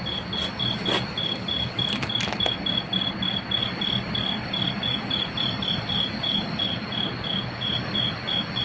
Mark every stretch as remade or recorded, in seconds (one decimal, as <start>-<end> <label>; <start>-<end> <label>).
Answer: 0.0-8.6 recorded